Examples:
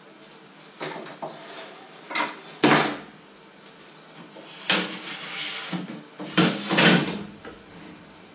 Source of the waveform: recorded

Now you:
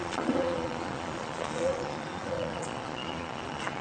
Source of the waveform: remade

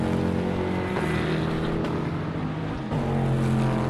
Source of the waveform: recorded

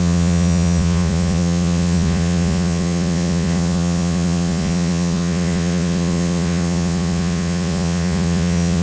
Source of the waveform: remade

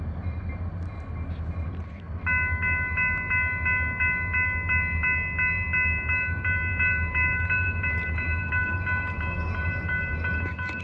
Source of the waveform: recorded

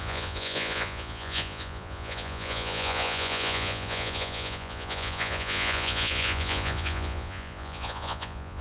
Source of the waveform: remade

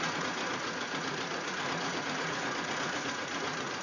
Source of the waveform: remade